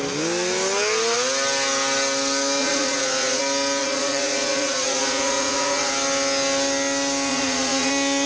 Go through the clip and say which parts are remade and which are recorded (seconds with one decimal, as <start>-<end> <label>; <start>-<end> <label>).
0.0-2.6 recorded; 2.6-3.4 remade; 3.4-3.8 recorded; 3.8-5.9 remade; 5.9-7.3 recorded; 7.3-7.9 remade; 7.9-8.3 recorded